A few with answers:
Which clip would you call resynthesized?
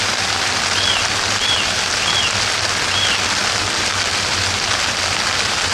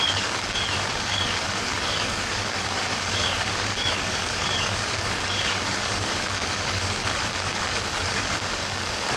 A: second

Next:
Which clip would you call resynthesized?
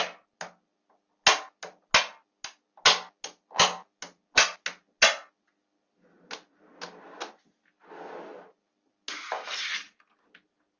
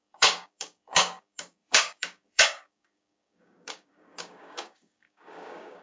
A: second